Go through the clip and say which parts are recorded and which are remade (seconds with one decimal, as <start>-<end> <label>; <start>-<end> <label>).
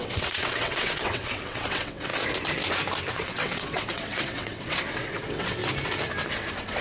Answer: 0.0-2.1 remade; 2.1-3.1 recorded; 3.1-5.6 remade; 5.6-6.3 recorded; 6.3-6.8 remade